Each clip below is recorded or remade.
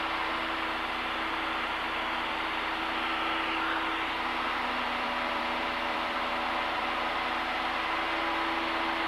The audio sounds remade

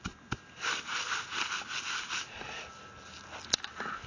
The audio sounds recorded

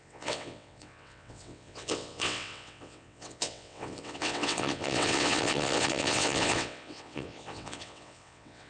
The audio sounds remade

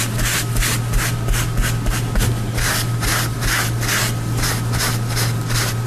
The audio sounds recorded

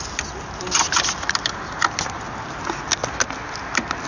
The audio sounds recorded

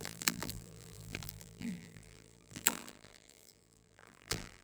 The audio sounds remade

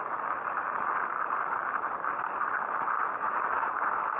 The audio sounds recorded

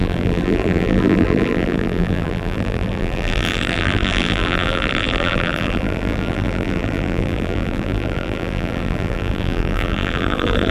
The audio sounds remade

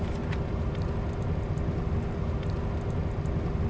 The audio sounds recorded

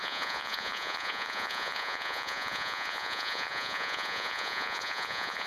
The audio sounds remade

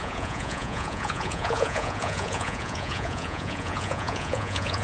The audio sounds remade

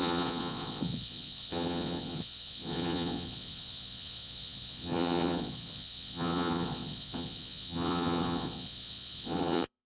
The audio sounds remade